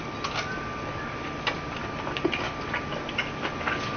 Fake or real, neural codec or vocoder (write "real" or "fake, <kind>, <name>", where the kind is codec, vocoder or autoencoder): real